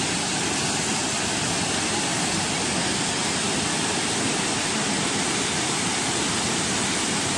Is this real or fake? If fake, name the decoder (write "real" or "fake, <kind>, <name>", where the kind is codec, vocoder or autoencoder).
real